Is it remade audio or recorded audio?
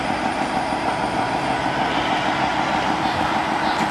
recorded